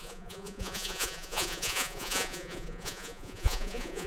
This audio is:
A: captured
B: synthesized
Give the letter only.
B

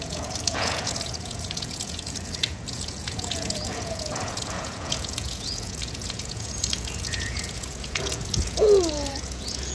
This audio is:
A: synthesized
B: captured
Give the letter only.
A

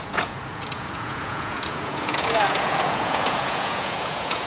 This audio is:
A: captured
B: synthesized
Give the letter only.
B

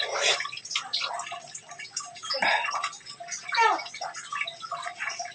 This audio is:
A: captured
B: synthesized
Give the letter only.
A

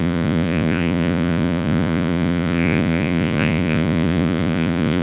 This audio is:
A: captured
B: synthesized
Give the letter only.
B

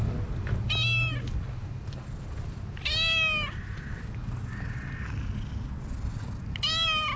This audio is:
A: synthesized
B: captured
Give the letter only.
B